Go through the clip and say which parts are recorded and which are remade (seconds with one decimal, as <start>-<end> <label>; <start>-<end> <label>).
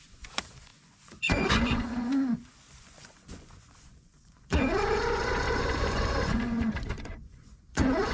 0.0-8.1 remade